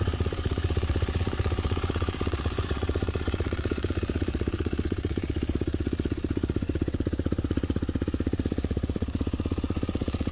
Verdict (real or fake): fake